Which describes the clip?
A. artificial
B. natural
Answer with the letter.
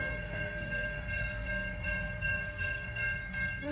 A